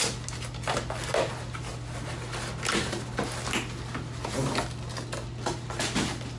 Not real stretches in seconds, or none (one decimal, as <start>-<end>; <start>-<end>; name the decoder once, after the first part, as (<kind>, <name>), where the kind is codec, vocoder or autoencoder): none